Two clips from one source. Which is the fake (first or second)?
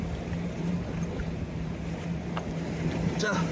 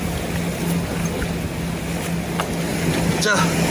first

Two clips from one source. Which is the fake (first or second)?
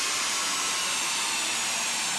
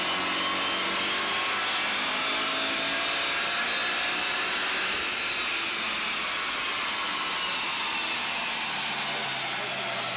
first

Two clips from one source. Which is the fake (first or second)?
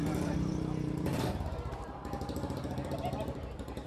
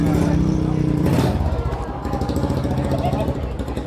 first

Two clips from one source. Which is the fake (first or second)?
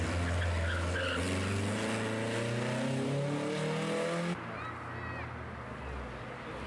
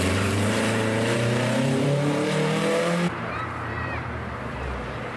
second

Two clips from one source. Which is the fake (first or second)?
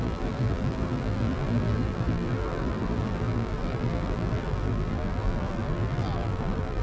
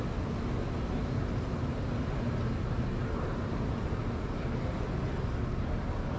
first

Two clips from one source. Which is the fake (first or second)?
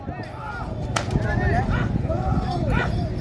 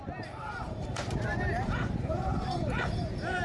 second